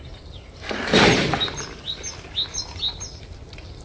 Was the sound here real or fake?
real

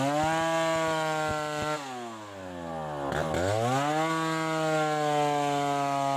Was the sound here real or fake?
real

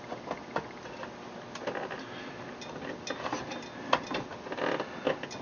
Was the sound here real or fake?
real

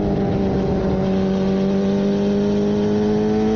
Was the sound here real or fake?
real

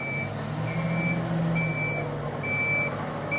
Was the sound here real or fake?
real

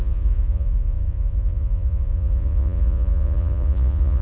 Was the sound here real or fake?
fake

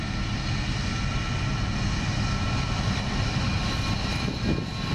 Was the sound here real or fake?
real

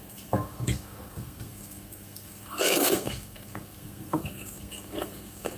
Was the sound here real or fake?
fake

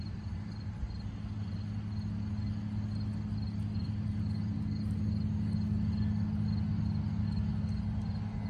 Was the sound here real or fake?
real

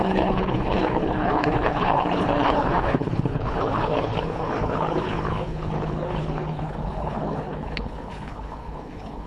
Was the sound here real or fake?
fake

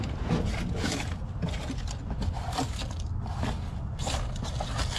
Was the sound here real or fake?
real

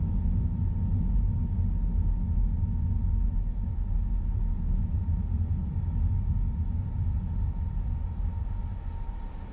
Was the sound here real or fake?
real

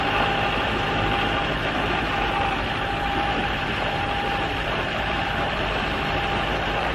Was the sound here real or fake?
fake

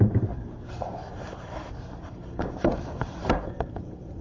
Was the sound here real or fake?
fake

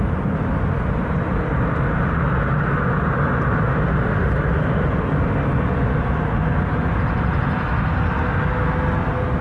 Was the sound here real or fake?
real